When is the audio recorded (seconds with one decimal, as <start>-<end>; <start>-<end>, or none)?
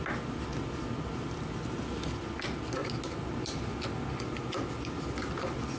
0.0-5.8